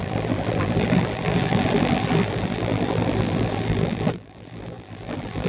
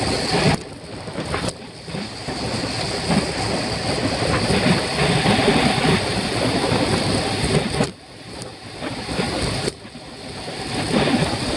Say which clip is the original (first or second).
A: second